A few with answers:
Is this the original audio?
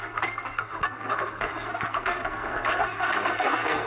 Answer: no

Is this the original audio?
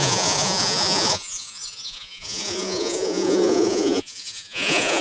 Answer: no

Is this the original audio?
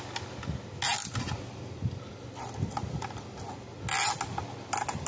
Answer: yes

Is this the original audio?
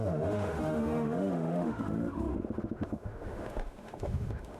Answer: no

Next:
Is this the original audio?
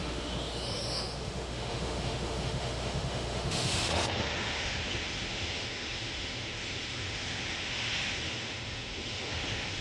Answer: no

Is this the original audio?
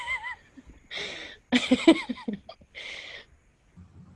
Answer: yes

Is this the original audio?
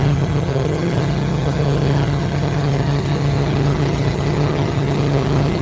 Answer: no